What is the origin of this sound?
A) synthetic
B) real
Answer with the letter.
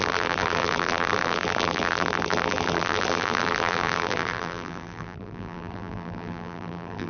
A